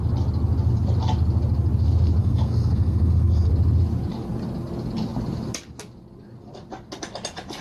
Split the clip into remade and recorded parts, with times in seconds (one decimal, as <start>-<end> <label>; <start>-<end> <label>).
0.0-2.2 recorded; 2.2-3.5 remade; 3.5-7.6 recorded